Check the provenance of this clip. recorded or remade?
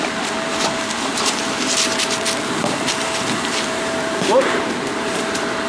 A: remade